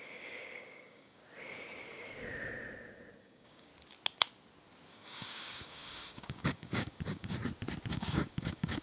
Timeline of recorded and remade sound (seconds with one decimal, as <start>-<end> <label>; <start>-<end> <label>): 0.0-1.2 remade; 1.2-3.2 recorded; 3.2-3.7 remade; 3.7-4.9 recorded; 4.9-7.4 remade; 7.4-7.9 recorded; 7.9-8.8 remade